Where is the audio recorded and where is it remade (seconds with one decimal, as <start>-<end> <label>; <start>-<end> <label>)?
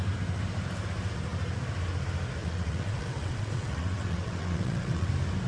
0.0-2.4 recorded; 2.4-5.1 remade; 5.1-5.5 recorded